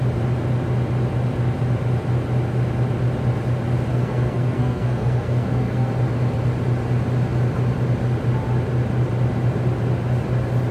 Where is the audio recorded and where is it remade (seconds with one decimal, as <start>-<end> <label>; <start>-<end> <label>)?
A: 0.0-3.9 recorded; 3.9-5.9 remade; 5.9-10.7 recorded